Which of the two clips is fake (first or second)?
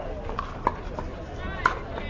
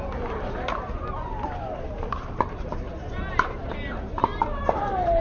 second